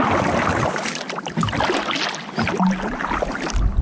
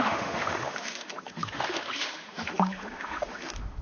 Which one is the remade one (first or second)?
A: second